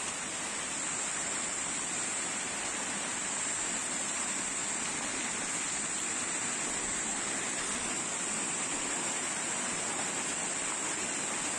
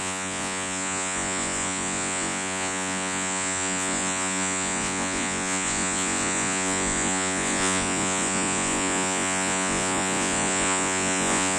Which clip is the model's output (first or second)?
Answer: second